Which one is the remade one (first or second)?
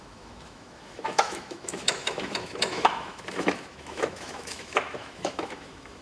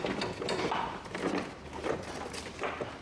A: first